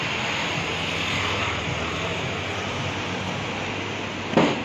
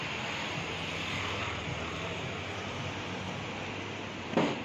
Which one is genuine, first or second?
first